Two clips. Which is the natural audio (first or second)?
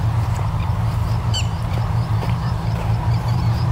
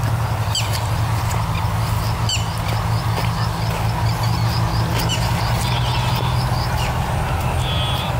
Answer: second